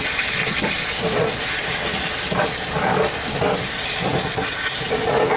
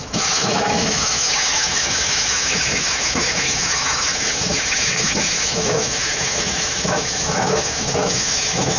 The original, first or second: first